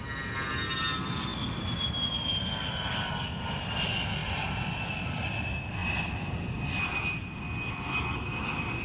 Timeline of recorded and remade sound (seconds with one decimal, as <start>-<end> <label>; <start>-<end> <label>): 0.0-8.8 recorded